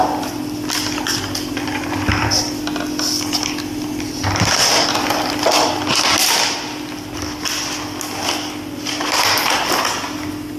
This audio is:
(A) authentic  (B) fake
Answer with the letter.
A